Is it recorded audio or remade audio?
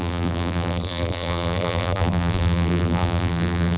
remade